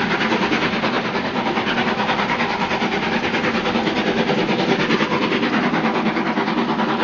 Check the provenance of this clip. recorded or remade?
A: recorded